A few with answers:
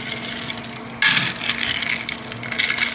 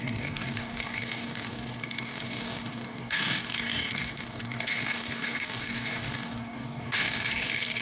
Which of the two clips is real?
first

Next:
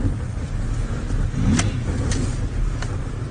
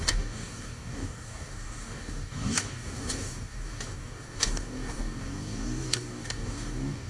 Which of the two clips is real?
first